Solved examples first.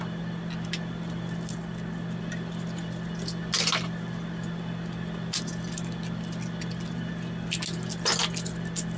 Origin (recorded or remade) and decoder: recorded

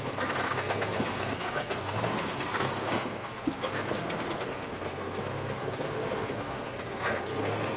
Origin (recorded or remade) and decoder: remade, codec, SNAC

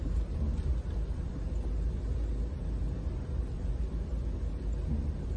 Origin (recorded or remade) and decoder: recorded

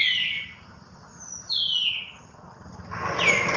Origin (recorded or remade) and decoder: recorded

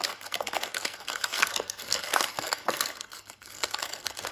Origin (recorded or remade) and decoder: remade, codec, SNAC